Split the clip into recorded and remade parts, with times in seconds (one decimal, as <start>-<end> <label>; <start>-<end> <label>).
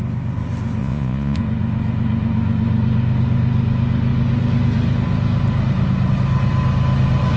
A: 0.0-0.8 recorded; 0.8-1.4 remade; 1.4-7.4 recorded